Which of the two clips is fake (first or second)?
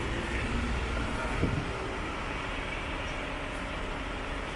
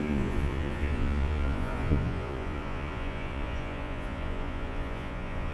second